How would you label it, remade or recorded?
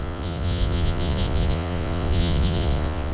remade